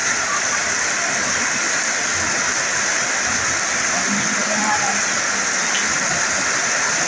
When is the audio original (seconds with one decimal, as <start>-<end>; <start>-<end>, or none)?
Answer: 0.6-7.1